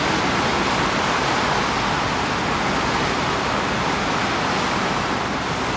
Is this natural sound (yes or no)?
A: yes